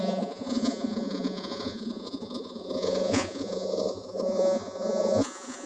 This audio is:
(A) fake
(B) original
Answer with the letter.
A